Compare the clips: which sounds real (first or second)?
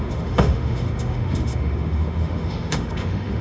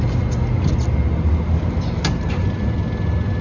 second